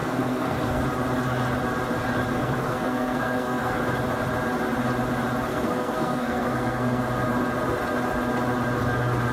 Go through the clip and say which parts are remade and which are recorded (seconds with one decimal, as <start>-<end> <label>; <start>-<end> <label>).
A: 0.0-0.8 remade; 0.8-2.3 recorded; 2.3-3.8 remade; 3.8-5.5 recorded; 5.5-7.0 remade; 7.0-9.3 recorded